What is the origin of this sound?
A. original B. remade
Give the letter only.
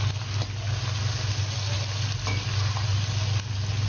A